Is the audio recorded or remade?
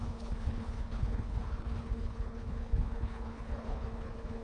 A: remade